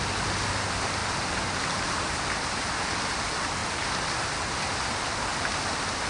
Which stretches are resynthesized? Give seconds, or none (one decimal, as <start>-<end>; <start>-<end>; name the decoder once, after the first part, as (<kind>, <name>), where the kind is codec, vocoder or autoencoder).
none